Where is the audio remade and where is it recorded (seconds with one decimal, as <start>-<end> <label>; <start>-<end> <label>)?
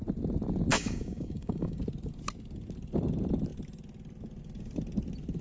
0.0-0.7 recorded; 0.7-1.8 remade; 1.8-5.4 recorded